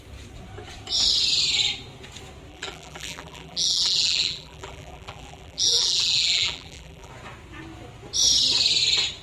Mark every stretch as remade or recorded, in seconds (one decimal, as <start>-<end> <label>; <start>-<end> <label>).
0.0-2.5 recorded; 2.5-7.1 remade; 7.1-9.2 recorded